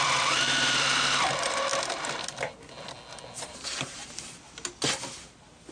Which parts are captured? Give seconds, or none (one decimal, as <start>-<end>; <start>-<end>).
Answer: 1.7-3.4; 4.0-5.7